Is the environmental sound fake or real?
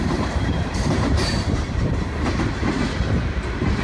fake